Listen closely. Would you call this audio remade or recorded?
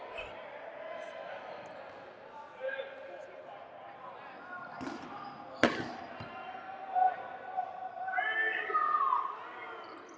recorded